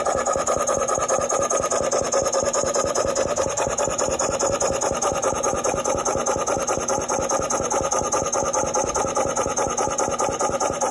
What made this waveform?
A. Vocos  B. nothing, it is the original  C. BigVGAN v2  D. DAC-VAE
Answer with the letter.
B